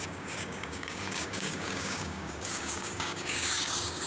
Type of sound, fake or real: fake